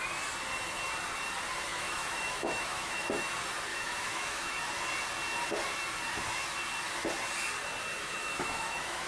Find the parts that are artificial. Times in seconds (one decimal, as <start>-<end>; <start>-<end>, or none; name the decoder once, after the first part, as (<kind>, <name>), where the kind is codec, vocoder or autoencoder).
1.7-3.3 (autoencoder, DAC-VAE); 3.7-4.6; 8.2-9.1